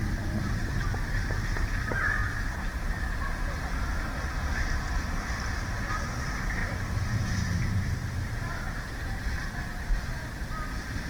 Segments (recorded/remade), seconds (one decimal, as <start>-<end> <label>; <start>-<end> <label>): 0.0-11.1 recorded